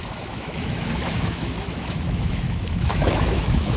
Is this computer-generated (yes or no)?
yes